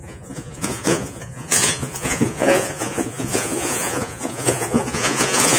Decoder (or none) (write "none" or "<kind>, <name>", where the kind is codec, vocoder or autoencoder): vocoder, Vocos